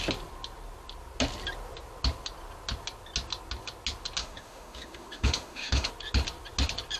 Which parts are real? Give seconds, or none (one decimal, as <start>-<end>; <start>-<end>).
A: 0.0-4.2; 5.9-7.0